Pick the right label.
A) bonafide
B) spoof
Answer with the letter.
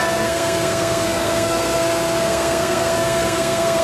B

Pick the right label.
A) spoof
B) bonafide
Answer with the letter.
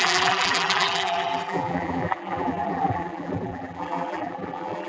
A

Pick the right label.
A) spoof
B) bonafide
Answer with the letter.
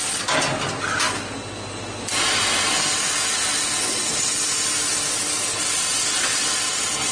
B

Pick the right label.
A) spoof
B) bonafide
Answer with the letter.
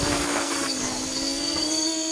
A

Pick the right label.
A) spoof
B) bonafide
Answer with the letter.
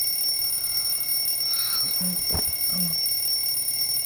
B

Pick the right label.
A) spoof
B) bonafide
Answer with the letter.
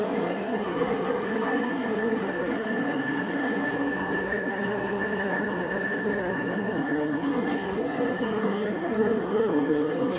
A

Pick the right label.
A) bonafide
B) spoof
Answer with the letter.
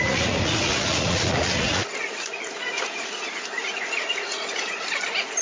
B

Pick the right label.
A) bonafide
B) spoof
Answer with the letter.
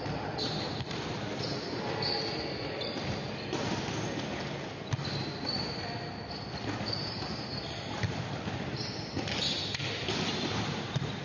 A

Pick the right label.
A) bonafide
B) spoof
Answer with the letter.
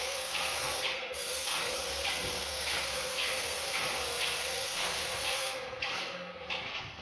B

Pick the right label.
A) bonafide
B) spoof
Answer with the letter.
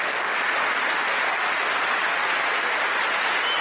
A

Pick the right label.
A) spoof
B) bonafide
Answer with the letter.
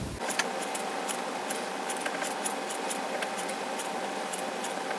B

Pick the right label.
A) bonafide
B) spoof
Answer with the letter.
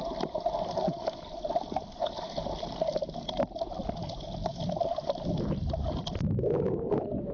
A